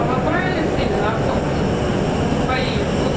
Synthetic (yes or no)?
no